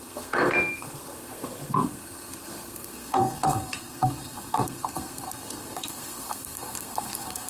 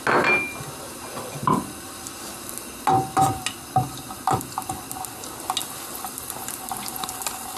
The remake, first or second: first